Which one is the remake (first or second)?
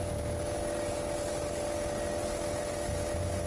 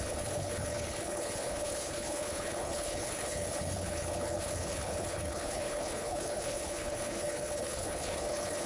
second